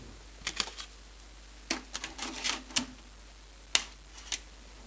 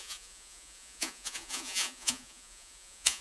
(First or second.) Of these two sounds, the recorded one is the first